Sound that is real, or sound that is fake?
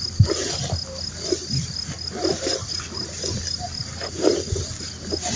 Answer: real